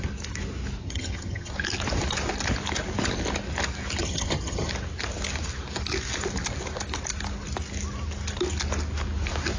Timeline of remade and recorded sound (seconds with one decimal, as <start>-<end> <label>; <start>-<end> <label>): 0.0-0.8 recorded; 0.8-1.5 remade; 1.5-4.0 recorded; 4.0-4.7 remade; 4.7-9.6 recorded